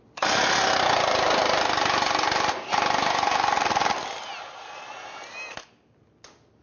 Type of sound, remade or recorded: recorded